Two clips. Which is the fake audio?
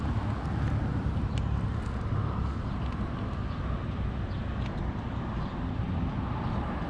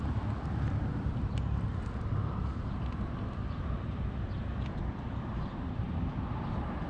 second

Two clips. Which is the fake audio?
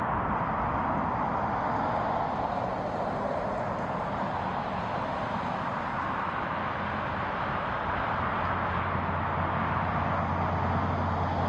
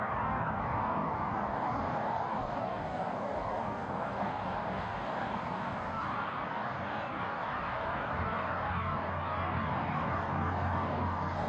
second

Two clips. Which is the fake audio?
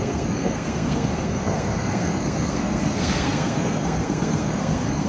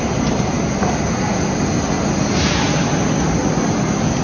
first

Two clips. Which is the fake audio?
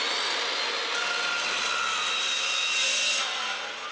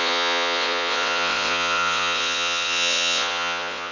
second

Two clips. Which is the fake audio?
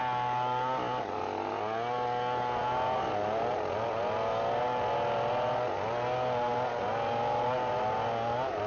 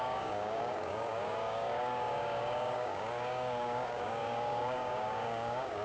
second